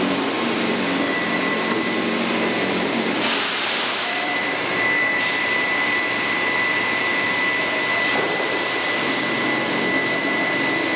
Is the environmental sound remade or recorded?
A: remade